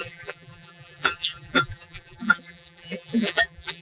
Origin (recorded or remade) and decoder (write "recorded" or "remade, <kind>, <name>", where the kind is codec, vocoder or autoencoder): remade, vocoder, BigVGAN v2